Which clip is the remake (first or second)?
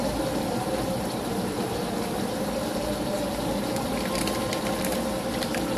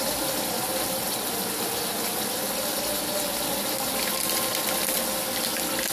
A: first